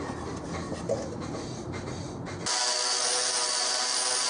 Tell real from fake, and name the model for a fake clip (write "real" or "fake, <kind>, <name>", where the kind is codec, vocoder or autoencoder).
real